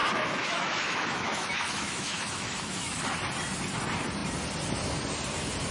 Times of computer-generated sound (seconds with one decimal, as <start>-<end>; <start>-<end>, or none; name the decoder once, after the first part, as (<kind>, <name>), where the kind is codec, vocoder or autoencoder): 0.0-3.0 (autoencoder, DAC-VAE)